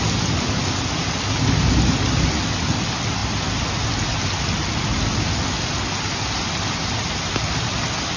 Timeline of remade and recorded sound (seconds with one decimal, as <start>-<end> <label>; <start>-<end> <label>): 0.0-8.2 recorded